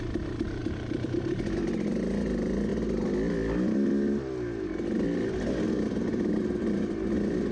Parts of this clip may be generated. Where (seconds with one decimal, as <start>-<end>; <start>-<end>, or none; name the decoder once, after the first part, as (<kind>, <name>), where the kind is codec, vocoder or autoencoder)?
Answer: 6.1-6.8 (vocoder, BigVGAN v2)